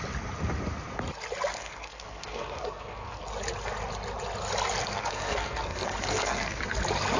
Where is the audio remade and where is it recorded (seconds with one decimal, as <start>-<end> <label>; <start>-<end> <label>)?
0.0-1.5 recorded; 1.5-3.3 remade; 3.3-4.8 recorded; 4.8-6.6 remade; 6.6-7.2 recorded